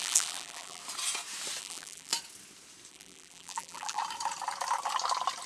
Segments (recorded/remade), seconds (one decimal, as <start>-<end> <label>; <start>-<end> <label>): 0.0-0.8 remade; 0.8-1.6 recorded; 1.6-2.1 remade; 2.1-2.9 recorded; 2.9-4.0 remade; 4.0-5.5 recorded